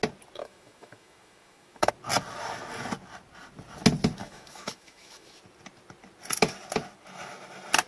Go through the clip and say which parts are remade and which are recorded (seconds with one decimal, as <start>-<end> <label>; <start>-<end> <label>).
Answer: 0.0-0.4 recorded; 0.4-1.9 remade; 1.9-4.2 recorded; 4.2-5.4 remade; 5.4-7.9 recorded